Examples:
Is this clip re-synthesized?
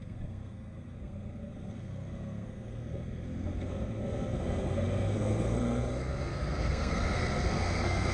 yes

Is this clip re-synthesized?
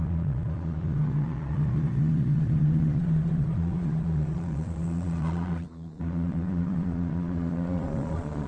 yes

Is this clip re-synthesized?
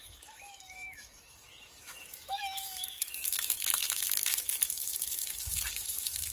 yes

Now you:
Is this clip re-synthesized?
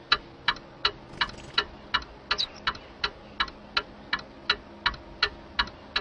no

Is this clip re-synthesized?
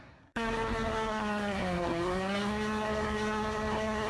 yes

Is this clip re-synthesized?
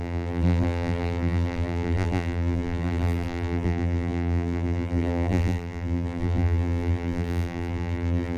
yes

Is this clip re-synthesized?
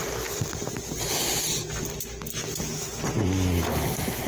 no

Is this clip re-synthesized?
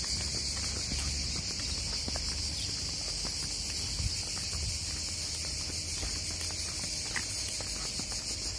no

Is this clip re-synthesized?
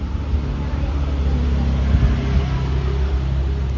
no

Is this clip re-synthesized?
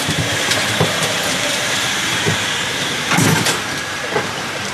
yes